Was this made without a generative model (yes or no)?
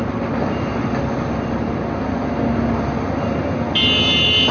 yes